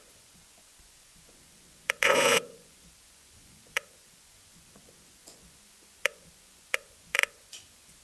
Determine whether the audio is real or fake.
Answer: fake